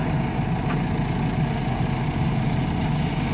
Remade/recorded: recorded